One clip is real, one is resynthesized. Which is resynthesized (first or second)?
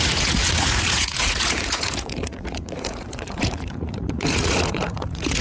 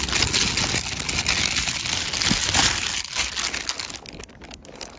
first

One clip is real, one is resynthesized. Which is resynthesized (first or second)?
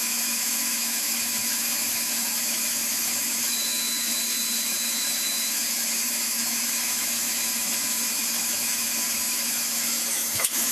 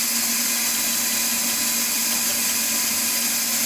first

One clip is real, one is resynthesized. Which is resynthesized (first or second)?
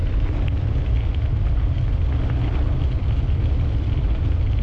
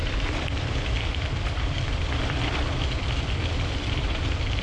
second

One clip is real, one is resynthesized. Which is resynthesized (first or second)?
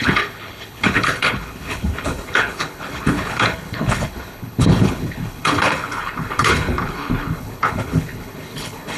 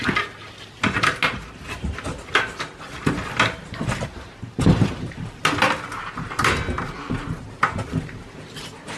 first